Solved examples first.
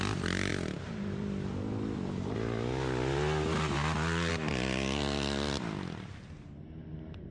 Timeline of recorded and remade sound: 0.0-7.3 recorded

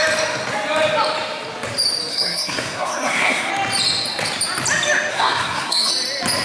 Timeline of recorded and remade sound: 0.0-2.1 recorded; 2.1-3.5 remade; 3.5-5.1 recorded; 5.1-5.9 remade; 5.9-6.4 recorded

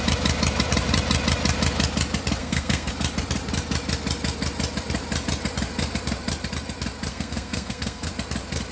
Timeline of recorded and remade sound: 0.0-2.4 recorded; 2.4-2.9 remade; 2.9-7.1 recorded; 7.1-8.1 remade; 8.1-8.7 recorded

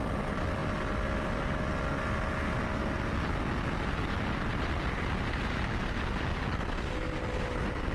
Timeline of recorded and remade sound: 0.0-7.9 recorded

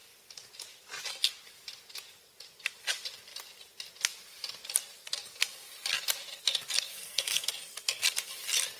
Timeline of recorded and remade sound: 0.0-6.9 recorded; 6.9-7.5 remade; 7.5-8.8 recorded

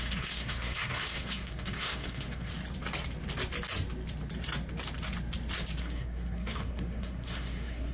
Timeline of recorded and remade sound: 0.0-2.5 remade; 2.5-5.8 recorded; 5.8-7.9 remade